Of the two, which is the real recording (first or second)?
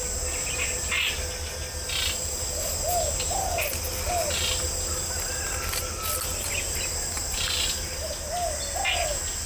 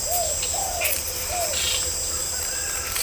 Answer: first